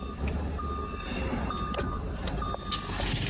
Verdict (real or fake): real